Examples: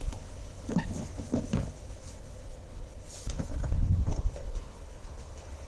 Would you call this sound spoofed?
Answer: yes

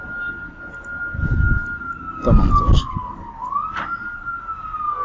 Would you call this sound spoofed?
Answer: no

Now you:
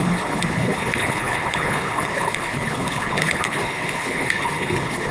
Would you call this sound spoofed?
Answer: yes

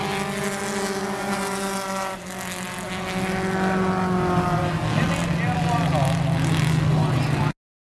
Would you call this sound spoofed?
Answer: no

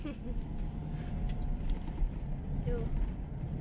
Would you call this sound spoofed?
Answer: no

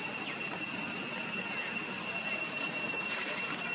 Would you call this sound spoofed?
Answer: no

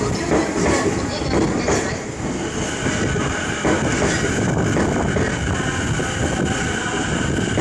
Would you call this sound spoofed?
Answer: no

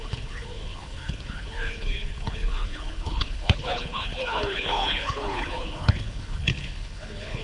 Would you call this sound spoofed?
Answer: yes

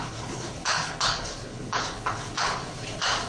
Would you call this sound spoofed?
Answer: yes